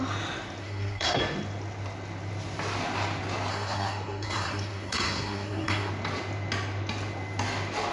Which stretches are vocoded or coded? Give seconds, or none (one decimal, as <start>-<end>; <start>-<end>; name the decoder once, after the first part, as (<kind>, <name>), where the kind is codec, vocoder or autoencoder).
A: 0.6-1.2 (codec, SNAC); 3.5-5.9